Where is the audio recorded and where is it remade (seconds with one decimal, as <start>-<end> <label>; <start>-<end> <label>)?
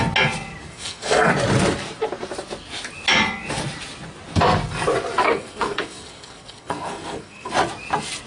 0.0-0.6 recorded; 0.6-1.3 remade; 1.3-5.2 recorded; 5.2-7.5 remade; 7.5-8.3 recorded